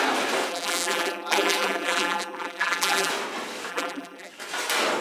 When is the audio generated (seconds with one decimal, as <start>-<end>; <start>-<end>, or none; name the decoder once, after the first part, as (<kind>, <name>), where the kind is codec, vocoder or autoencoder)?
0.5-3.1 (vocoder, BigVGAN v2); 3.7-4.3